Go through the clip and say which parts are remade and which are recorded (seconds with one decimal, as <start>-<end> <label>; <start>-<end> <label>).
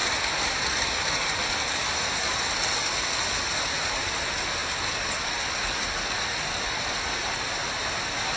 0.0-8.4 recorded